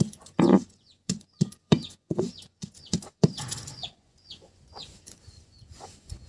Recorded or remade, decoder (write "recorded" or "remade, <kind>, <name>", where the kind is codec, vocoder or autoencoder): remade, vocoder, Vocos